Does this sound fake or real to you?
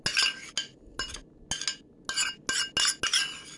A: real